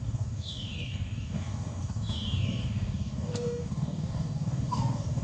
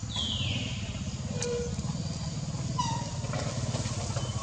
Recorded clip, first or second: second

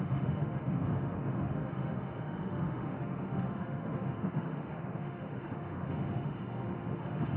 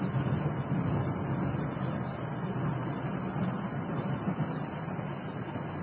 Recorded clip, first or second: second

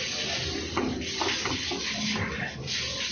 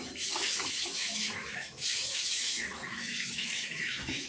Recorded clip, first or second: first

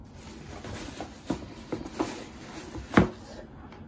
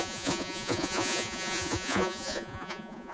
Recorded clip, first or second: first